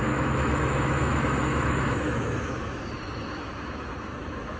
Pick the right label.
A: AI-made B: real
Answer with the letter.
A